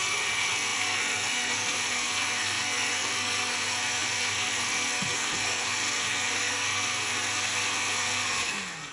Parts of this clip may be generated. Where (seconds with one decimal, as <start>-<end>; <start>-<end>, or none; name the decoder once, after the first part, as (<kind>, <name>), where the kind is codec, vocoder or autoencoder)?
0.0-8.9 (codec, SNAC)